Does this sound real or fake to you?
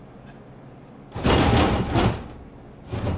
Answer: real